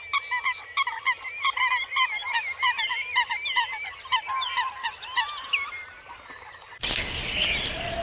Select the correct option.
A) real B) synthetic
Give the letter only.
A